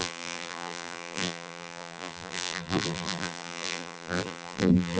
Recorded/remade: remade